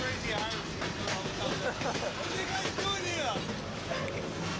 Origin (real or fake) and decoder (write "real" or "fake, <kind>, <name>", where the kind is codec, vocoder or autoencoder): real